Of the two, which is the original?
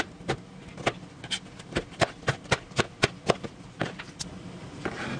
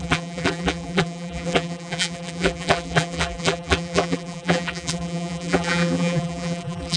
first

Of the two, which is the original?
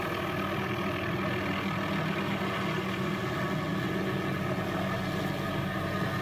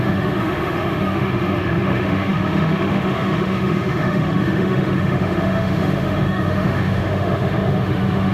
first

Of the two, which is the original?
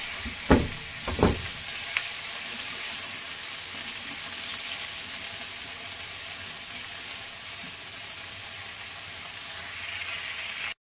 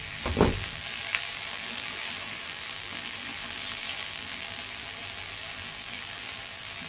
first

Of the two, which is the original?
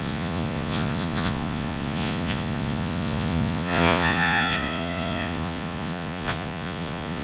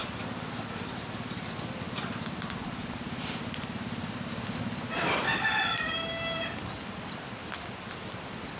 second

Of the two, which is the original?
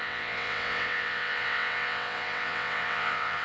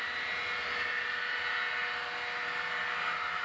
second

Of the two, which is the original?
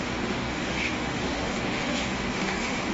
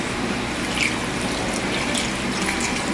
second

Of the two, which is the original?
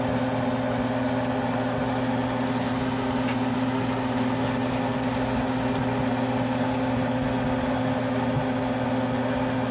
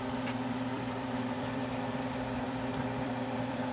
first